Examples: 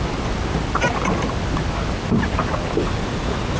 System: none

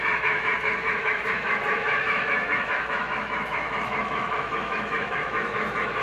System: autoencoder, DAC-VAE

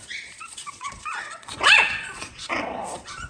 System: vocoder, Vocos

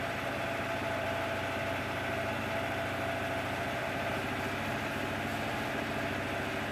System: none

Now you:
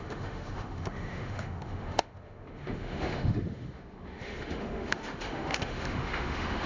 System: autoencoder, DAC-VAE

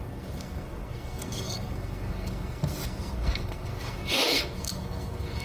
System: codec, SNAC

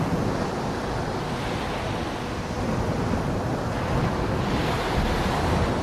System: none